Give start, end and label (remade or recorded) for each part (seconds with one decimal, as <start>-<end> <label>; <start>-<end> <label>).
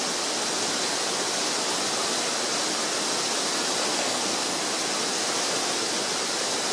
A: 0.0-3.9 recorded; 3.9-4.6 remade; 4.6-6.7 recorded